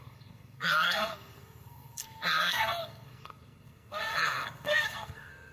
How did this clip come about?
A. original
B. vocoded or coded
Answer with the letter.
B